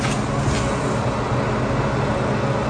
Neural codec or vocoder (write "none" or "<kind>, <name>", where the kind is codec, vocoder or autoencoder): none